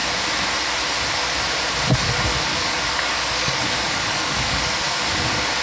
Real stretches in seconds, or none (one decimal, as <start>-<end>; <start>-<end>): 0.0-2.5; 5.1-5.6